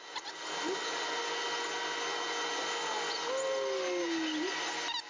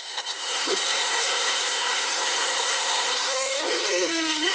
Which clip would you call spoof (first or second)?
second